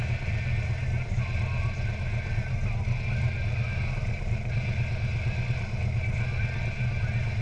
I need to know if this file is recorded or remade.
recorded